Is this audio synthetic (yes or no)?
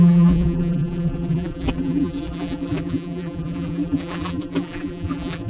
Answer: yes